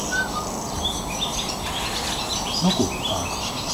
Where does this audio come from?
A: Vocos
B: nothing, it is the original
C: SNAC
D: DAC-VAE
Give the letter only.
B